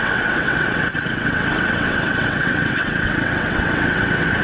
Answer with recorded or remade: remade